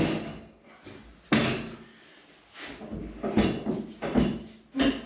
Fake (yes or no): no